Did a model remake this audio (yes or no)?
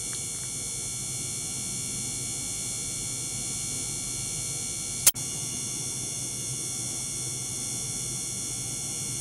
no